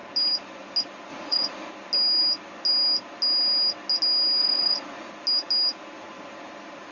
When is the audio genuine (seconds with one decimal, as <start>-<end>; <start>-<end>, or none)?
0.0-1.1; 1.7-4.4; 5.1-6.9